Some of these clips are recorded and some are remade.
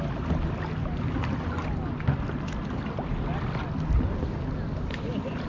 recorded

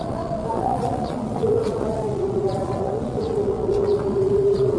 remade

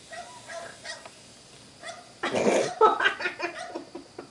recorded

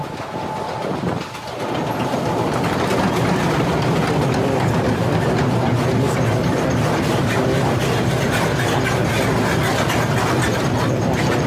recorded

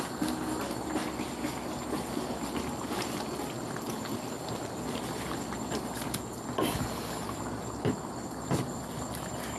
recorded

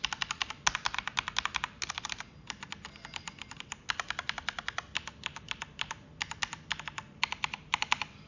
recorded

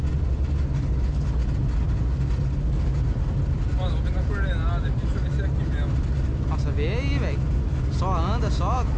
recorded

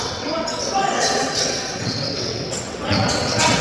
remade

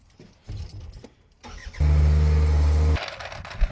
recorded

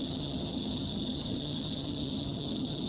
remade